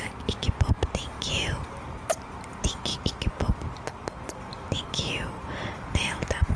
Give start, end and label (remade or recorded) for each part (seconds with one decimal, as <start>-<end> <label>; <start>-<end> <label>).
0.0-6.6 recorded